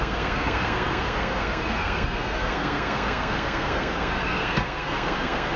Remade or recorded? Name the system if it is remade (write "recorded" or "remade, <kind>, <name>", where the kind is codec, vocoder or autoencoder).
remade, codec, SNAC